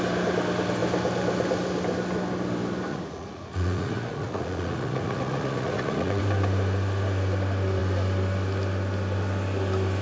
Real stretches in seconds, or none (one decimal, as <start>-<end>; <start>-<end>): 0.0-2.9; 6.2-10.0